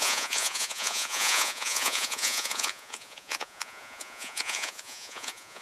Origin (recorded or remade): remade